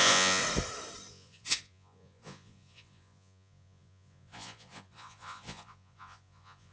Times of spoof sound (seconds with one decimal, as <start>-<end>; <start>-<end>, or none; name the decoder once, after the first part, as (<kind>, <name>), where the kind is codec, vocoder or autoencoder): 0.0-0.4 (vocoder, Vocos); 1.1-6.7